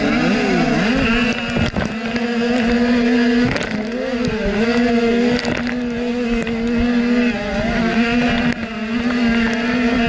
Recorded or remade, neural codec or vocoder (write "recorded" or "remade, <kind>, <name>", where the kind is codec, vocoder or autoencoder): recorded